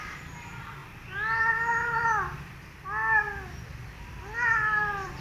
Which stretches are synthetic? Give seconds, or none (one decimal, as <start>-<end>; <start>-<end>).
none